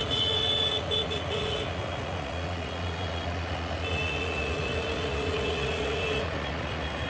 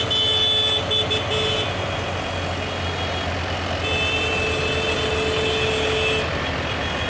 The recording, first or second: second